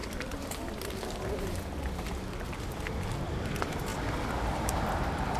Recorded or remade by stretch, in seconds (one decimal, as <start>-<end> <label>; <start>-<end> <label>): 0.0-3.2 recorded; 3.2-3.9 remade; 3.9-4.5 recorded; 4.5-5.4 remade